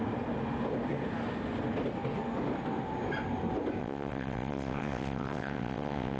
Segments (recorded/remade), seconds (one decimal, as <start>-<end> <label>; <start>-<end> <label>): 0.0-3.8 recorded; 3.8-6.2 remade